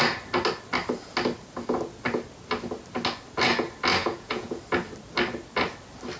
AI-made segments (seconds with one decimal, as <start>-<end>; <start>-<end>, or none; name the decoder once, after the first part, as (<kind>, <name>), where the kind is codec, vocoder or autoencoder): 4.0-4.6 (vocoder, Vocos)